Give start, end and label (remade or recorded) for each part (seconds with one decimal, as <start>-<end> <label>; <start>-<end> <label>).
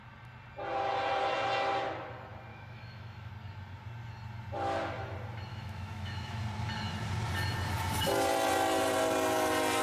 0.0-2.5 recorded; 2.5-3.3 remade; 3.3-5.5 recorded; 5.5-6.4 remade; 6.4-9.8 recorded